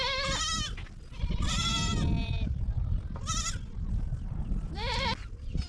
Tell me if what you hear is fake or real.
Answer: real